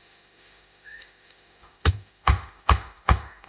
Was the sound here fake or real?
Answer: fake